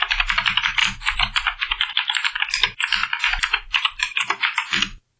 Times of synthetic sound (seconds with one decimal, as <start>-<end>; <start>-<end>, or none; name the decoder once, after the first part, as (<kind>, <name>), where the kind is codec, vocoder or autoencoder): 0.8-1.9 (vocoder, BigVGAN v2); 3.0-4.7